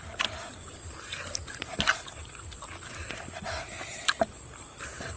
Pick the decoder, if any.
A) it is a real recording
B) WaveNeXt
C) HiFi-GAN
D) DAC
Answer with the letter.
A